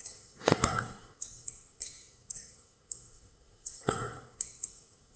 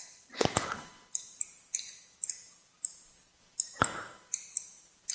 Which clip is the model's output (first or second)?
first